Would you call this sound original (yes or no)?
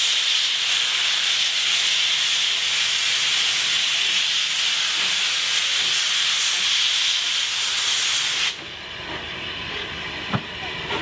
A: yes